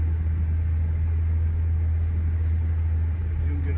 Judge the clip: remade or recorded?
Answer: recorded